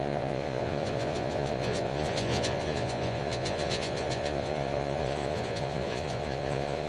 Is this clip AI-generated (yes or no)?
yes